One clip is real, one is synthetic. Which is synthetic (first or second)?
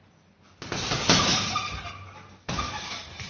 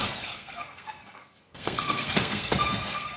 second